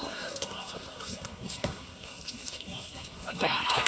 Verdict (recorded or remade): remade